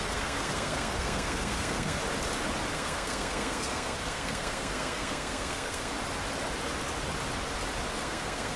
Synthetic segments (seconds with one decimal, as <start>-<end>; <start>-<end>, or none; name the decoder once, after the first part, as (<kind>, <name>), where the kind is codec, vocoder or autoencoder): 0.0-2.0 (codec, SNAC); 2.7-5.9; 8.0-8.6